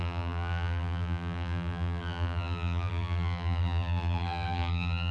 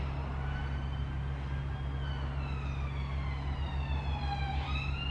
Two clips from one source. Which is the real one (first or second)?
second